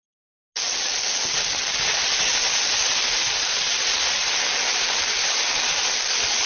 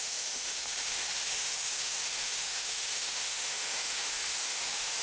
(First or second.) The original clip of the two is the first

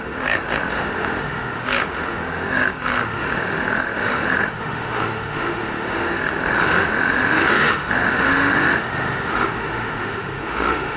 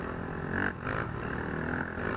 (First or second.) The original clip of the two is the second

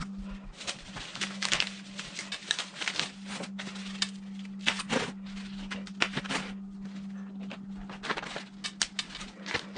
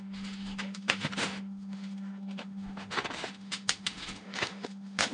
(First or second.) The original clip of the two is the first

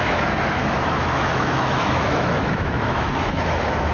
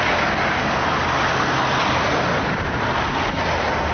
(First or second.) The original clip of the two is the second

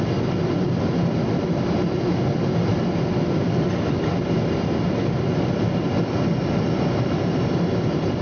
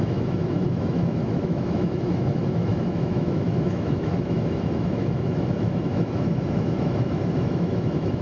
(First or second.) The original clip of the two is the first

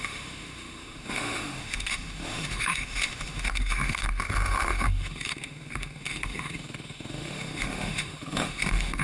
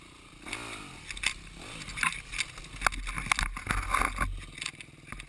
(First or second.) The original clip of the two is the second